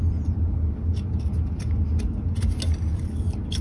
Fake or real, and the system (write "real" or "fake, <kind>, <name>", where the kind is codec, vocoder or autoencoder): real